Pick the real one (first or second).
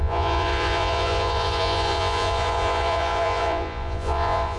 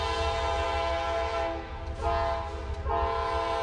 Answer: second